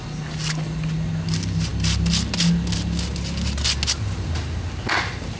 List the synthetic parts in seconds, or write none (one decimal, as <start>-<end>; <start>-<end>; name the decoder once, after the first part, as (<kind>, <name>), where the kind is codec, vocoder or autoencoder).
0.0-1.7 (vocoder, BigVGAN v2); 4.9-5.4

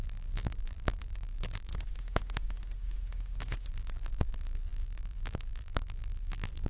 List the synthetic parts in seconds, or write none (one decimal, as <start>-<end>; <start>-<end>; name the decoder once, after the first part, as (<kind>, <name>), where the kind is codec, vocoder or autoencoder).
0.0-1.7 (vocoder, BigVGAN v2); 3.7-6.7

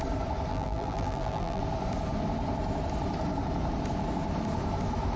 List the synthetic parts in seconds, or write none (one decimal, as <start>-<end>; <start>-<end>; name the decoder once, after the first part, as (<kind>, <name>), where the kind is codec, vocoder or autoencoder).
0.5-1.6 (vocoder, BigVGAN v2)

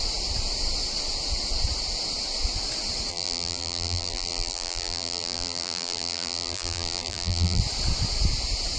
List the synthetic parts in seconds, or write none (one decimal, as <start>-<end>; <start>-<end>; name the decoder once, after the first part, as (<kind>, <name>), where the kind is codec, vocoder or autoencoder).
3.1-7.6 (vocoder, BigVGAN v2)

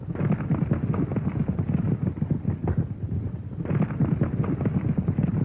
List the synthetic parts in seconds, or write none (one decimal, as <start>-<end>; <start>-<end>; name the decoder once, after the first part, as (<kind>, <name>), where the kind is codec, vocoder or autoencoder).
none